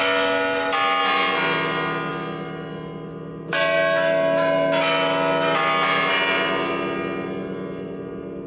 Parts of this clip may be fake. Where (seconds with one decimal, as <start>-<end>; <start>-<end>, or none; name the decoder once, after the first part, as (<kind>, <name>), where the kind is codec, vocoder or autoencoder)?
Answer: none